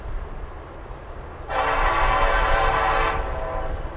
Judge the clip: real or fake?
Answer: real